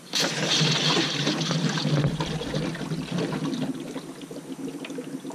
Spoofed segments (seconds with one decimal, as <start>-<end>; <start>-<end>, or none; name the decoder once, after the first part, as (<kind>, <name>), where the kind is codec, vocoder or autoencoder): 0.0-1.8 (vocoder, BigVGAN v2)